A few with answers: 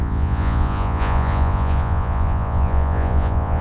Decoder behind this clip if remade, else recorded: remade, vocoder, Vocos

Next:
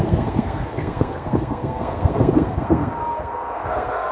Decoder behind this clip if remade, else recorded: remade, codec, SNAC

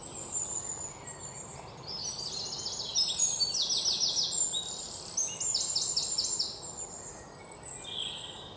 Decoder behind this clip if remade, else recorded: recorded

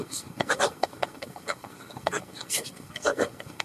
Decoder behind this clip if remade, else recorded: remade, codec, SNAC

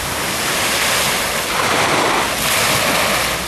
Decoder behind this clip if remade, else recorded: recorded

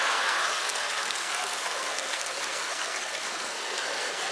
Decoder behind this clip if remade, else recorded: remade, codec, SNAC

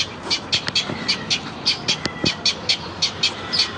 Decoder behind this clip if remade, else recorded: recorded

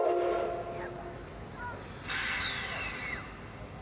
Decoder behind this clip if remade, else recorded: recorded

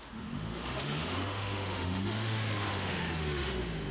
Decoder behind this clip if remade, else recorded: remade, autoencoder, DAC-VAE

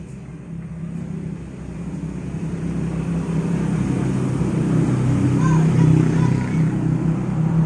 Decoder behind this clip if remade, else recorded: recorded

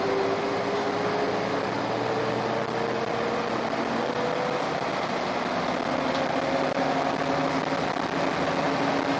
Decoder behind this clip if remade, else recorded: recorded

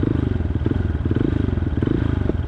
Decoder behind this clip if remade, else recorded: recorded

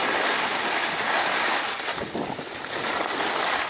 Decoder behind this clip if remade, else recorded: recorded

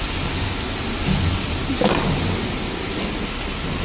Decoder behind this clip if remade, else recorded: recorded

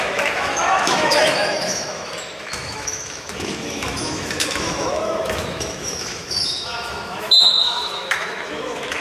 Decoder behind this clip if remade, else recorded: remade, autoencoder, DAC-VAE